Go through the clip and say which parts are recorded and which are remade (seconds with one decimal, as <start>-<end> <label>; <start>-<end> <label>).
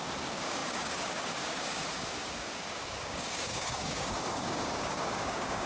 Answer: 0.0-5.7 remade